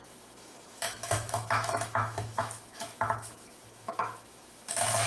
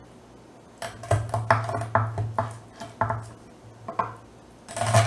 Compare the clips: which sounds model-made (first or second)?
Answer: first